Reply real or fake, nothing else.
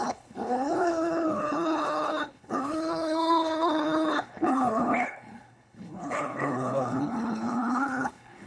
fake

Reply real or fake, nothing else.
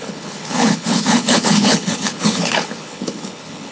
fake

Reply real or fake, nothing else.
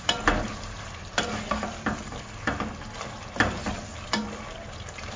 real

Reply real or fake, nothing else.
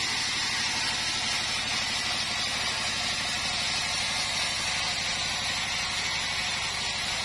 real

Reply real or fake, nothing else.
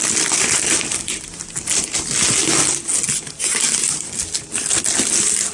real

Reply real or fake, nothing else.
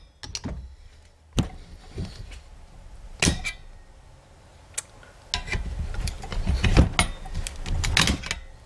real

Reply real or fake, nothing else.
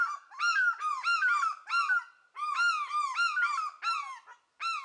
real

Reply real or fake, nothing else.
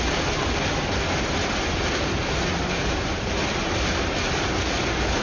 real